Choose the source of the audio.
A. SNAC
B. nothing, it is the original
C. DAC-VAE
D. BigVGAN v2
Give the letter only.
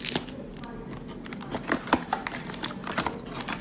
B